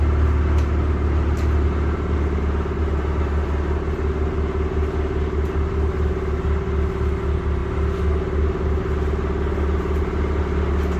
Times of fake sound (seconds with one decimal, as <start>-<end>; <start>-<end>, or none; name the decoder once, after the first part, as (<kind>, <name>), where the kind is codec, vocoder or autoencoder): none